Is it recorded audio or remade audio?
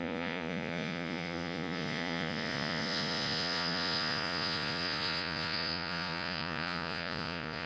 remade